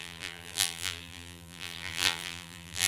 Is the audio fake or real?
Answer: fake